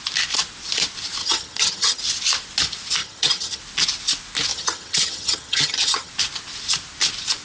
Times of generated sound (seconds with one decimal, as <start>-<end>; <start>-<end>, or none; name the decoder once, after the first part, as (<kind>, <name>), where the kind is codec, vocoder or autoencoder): 1.2-2.0 (vocoder, HiFi-GAN); 3.0-3.6; 4.5-6.1